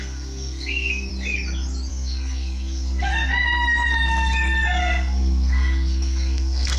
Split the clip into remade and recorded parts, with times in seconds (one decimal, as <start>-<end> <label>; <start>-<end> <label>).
0.0-1.1 remade; 1.1-1.9 recorded; 1.9-3.1 remade; 3.1-4.8 recorded; 4.8-6.8 remade